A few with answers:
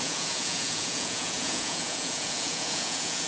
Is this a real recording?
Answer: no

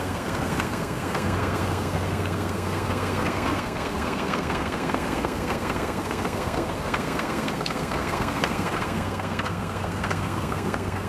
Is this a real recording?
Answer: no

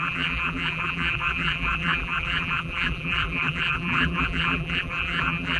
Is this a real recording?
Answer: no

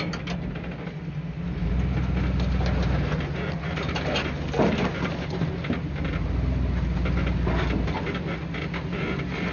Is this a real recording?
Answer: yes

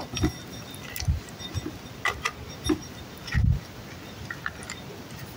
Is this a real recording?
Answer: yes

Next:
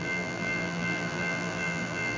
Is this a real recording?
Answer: no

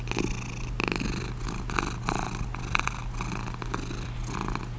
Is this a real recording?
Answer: yes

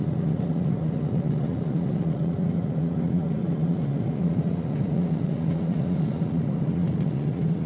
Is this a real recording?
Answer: no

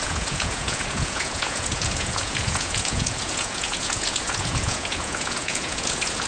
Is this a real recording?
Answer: no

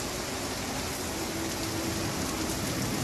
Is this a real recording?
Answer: yes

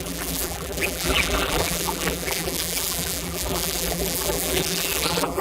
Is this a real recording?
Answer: no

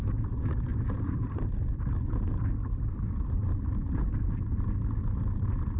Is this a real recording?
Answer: no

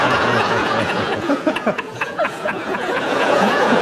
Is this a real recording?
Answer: no